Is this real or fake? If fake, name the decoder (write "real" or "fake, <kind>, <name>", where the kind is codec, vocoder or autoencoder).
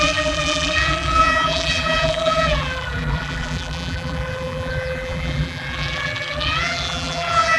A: fake, vocoder, BigVGAN v2